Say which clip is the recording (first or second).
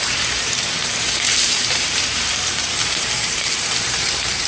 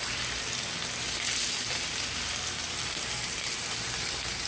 second